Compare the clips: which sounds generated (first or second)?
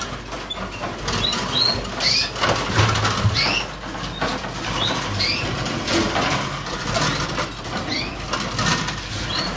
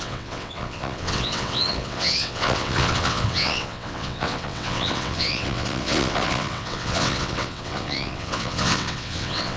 second